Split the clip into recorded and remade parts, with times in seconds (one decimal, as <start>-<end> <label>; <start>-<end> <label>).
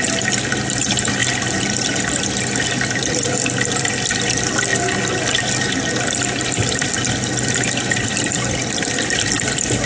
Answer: 0.0-4.7 remade; 4.7-6.1 recorded; 6.1-9.9 remade